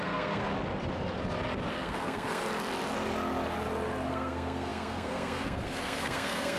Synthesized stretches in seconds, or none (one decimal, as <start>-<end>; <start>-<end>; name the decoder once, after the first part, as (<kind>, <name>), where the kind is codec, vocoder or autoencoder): 0.0-0.4 (codec, SNAC); 1.7-2.4; 4.1-6.6